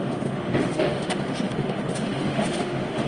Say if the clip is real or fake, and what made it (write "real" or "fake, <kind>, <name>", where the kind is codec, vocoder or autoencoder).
fake, autoencoder, DAC-VAE